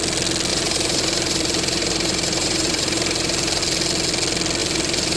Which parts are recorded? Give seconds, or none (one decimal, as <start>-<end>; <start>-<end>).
0.0-0.5; 3.6-4.6